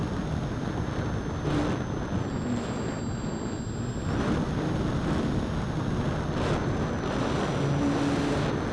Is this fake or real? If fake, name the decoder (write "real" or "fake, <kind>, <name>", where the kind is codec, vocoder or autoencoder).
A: real